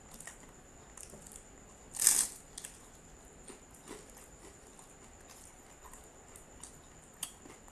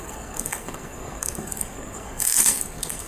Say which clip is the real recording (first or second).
first